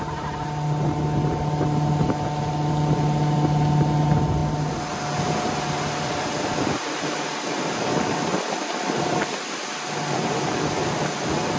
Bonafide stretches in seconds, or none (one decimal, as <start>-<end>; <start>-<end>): 0.0-11.6